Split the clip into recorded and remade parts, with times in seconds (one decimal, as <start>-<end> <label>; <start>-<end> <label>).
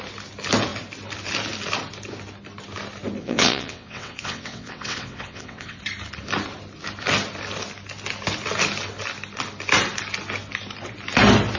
0.0-3.2 recorded; 3.2-5.8 remade; 5.8-11.6 recorded